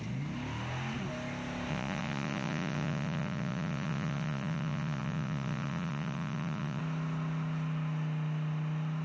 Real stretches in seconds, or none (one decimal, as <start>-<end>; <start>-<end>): 0.0-1.7; 6.8-9.0